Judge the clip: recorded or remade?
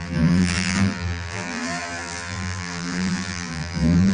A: remade